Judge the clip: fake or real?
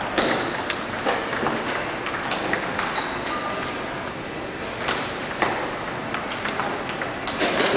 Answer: real